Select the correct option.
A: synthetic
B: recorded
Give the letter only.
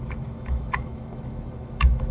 A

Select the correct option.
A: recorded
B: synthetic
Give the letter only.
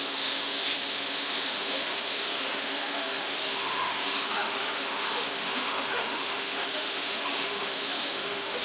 B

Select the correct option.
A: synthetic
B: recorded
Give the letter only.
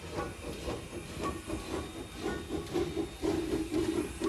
B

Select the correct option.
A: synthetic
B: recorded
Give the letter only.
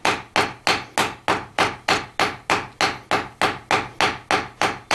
B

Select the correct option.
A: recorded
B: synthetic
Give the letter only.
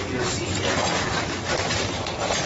A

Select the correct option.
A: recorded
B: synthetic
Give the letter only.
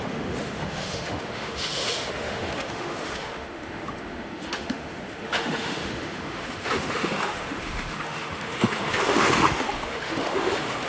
B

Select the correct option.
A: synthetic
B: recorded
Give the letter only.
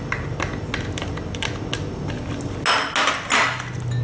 B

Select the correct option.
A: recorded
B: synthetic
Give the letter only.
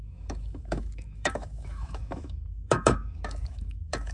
B